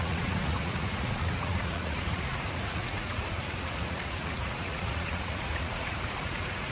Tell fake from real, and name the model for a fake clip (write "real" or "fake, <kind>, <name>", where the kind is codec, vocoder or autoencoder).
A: fake, vocoder, Vocos